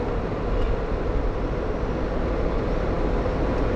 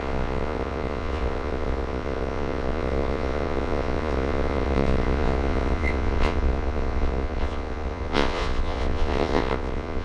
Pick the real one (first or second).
first